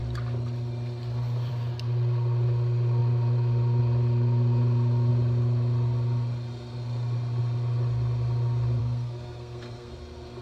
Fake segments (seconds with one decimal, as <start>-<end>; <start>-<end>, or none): 8.8-9.9